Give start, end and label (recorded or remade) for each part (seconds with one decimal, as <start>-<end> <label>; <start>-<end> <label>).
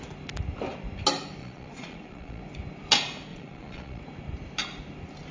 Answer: 0.0-1.4 recorded; 1.4-2.4 remade; 2.4-3.3 recorded; 3.3-4.0 remade; 4.0-5.3 recorded